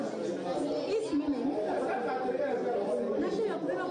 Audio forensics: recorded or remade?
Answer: recorded